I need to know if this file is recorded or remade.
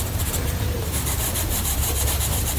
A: remade